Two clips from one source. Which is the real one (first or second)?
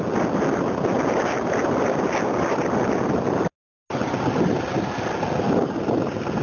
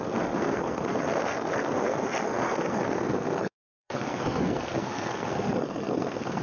first